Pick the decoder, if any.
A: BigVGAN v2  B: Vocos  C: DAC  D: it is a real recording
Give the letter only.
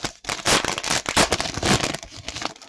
D